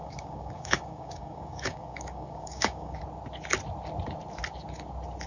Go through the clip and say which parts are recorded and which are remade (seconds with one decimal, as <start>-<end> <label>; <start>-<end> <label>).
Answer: 0.0-3.0 remade; 3.0-5.3 recorded